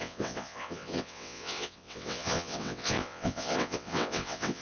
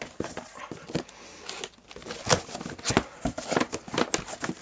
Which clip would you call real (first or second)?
second